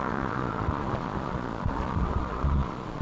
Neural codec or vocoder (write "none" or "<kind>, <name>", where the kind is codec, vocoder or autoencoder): vocoder, Vocos